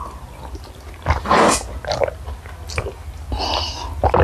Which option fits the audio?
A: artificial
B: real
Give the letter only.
B